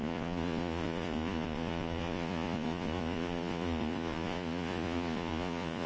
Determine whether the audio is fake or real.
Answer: fake